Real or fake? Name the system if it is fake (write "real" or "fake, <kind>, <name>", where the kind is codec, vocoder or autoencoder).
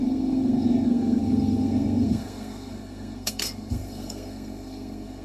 fake, codec, SNAC